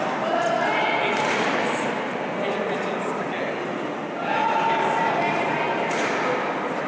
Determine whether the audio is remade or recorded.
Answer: recorded